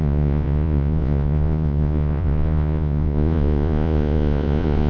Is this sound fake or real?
fake